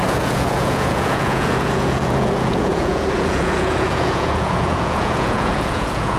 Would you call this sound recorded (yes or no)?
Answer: no